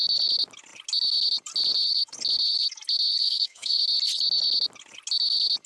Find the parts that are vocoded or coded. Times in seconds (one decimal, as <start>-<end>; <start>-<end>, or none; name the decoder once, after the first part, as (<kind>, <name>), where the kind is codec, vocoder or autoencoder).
3.2-3.8 (autoencoder, DAC-VAE)